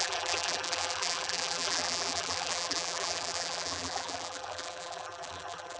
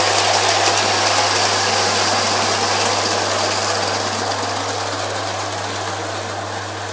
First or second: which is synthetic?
first